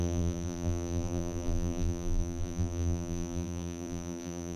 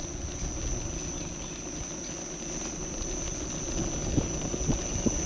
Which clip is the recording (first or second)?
second